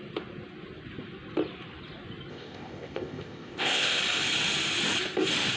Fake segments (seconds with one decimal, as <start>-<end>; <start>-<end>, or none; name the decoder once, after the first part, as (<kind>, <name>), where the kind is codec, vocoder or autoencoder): 2.3-4.0 (codec, ZipCodec)

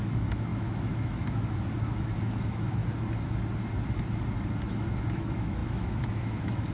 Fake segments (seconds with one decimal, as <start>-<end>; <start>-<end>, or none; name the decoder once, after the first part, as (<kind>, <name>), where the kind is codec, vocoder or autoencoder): 0.0-2.8 (autoencoder, DAC-VAE); 4.6-6.7

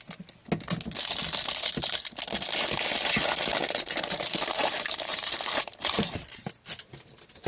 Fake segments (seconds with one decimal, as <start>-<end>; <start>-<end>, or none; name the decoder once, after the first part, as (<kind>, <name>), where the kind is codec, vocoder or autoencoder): 3.6-6.4 (vocoder, BigVGAN v2)

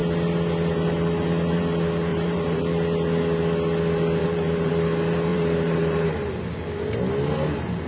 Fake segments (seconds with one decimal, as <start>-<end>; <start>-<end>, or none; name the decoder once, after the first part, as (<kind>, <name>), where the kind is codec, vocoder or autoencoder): 2.1-2.6 (vocoder, BigVGAN v2); 4.2-4.7; 5.3-6.3

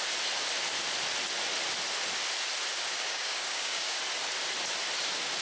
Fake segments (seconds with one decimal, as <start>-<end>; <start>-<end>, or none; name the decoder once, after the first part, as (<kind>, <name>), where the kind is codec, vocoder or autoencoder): 2.7-4.0 (codec, DAC)